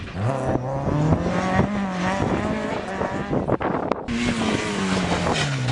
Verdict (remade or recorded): recorded